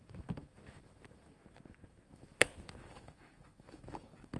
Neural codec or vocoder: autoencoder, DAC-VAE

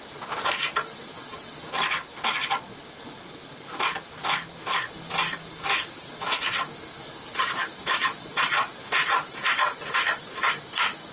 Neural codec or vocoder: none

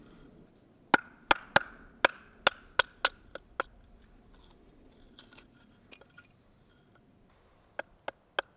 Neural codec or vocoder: none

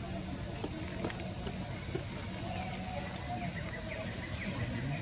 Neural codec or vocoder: none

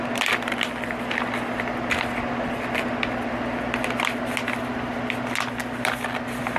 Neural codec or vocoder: none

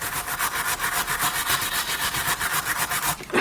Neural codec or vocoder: none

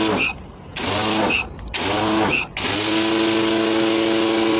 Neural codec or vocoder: none